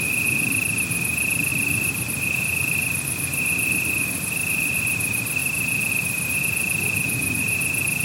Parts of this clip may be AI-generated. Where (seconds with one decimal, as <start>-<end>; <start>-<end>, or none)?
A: 1.5-4.8